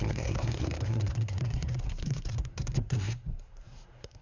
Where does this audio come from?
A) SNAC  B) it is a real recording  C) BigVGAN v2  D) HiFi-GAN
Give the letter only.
A